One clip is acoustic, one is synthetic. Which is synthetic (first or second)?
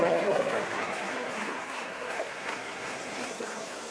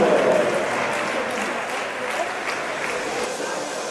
first